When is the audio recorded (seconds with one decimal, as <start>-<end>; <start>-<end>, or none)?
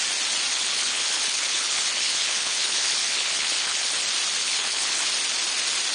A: 0.0-0.5; 4.0-4.4; 5.1-5.9